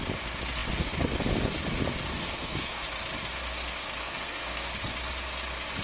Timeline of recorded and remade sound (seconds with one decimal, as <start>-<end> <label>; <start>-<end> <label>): 0.0-2.1 recorded; 2.1-2.8 remade; 2.8-4.0 recorded; 4.0-4.7 remade; 4.7-5.8 recorded